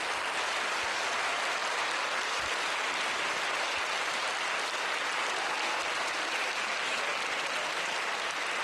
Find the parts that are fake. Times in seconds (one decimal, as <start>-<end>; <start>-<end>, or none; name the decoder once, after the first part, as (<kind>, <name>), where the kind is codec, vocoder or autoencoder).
none